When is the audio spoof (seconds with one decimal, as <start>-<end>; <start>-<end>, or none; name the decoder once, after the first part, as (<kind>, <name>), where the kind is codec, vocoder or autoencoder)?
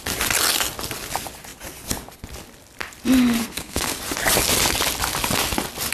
3.4-4.0 (codec, SNAC)